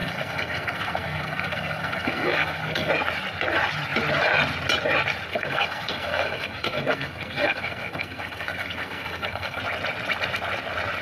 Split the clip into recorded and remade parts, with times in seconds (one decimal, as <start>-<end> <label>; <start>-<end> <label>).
0.0-2.9 remade; 2.9-5.3 recorded; 5.3-9.6 remade; 9.6-11.0 recorded